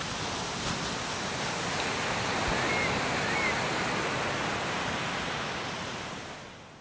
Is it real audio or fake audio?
real